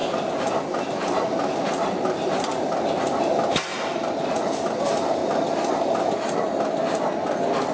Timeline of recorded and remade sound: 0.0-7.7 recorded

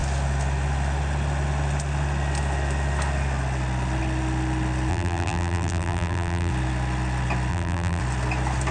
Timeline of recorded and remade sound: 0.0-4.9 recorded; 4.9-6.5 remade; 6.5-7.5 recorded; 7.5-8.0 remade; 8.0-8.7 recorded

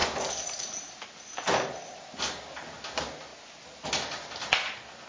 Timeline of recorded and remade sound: 0.0-5.1 recorded